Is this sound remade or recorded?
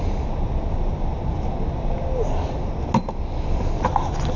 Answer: recorded